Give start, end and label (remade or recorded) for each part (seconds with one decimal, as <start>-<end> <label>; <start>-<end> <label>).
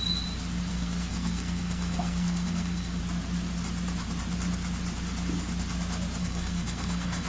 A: 0.0-0.7 recorded; 0.7-3.0 remade; 3.0-6.2 recorded; 6.2-7.3 remade